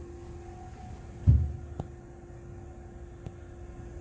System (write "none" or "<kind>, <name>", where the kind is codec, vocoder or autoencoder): none